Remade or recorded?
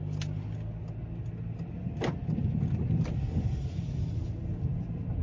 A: recorded